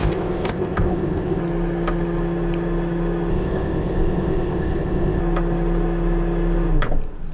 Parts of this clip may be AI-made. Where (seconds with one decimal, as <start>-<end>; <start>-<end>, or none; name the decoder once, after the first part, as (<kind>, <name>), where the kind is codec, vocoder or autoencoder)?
0.0-1.4 (codec, ZipCodec); 3.3-5.2

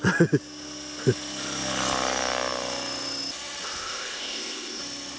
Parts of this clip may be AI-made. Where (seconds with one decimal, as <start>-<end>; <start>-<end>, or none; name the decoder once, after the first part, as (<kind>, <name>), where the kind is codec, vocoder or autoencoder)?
3.8-4.8 (codec, ZipCodec)

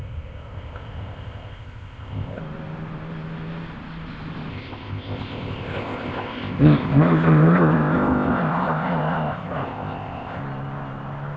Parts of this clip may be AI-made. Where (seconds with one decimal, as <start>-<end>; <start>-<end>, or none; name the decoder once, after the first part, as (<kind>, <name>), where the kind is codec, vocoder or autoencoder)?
0.0-2.4 (codec, ZipCodec); 4.5-10.4

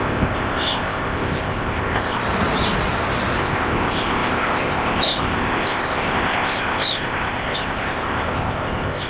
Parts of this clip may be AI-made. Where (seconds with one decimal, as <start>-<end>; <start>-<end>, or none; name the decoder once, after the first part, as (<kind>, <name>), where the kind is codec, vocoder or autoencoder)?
0.0-2.2 (codec, ZipCodec); 3.4-9.1

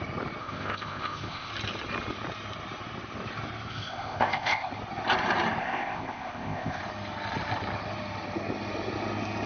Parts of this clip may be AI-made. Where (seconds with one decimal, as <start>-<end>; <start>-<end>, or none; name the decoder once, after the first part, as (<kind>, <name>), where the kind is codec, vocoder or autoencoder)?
0.4-1.5 (codec, ZipCodec); 3.7-4.7; 5.6-6.8